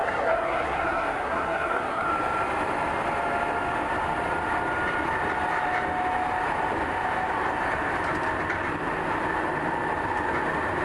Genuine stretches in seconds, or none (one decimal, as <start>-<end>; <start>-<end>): 2.1-10.8